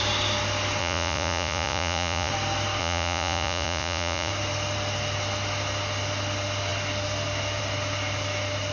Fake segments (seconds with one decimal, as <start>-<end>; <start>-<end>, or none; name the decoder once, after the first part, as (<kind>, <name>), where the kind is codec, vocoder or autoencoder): 0.8-2.3 (vocoder, Vocos); 2.8-4.3